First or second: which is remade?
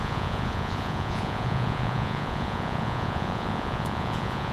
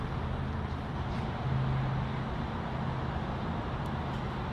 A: first